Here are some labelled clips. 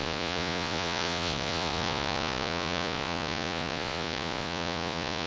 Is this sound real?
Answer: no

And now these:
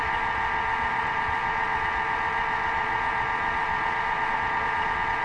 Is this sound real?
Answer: no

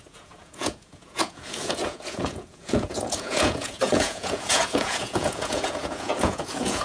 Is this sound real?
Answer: no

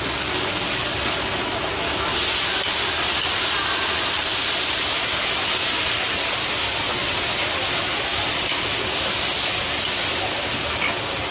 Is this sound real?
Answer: yes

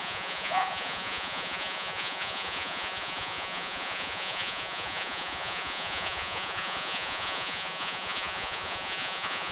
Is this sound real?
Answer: no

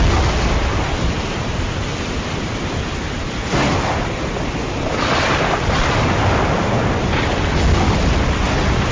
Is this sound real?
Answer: yes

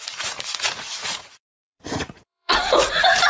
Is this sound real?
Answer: no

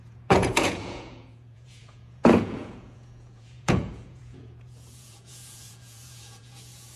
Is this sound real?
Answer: no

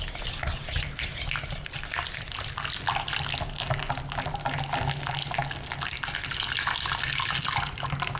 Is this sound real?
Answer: yes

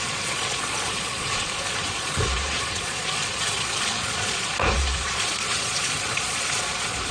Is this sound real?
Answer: no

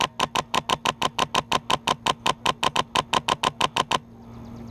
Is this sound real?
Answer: yes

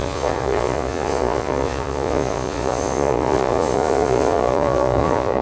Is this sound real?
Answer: no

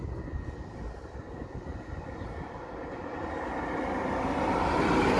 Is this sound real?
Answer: yes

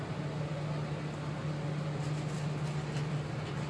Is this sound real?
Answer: yes